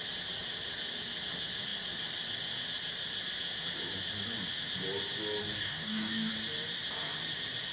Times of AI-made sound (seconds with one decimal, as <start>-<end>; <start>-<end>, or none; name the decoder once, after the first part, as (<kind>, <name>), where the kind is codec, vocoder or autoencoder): 5.4-6.3 (codec, DAC)